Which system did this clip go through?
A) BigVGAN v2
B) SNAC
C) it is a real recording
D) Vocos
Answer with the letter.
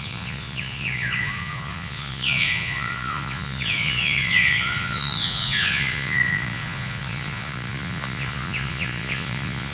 D